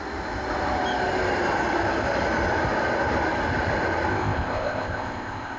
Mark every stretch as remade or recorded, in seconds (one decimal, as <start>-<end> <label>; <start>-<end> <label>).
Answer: 0.0-4.1 recorded; 4.1-5.6 remade